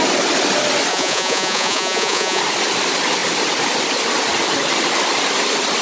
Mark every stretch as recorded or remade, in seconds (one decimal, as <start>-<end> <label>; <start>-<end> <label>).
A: 0.0-0.9 recorded; 0.9-2.4 remade; 2.4-5.8 recorded